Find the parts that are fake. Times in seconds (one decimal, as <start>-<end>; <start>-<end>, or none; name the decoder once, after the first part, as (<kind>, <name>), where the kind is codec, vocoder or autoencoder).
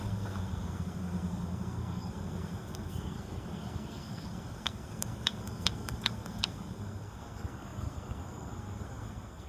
0.0-9.5 (codec, SNAC)